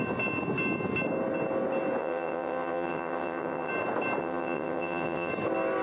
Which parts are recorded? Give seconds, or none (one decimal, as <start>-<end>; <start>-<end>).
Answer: 0.0-2.0; 3.7-4.2; 5.3-5.8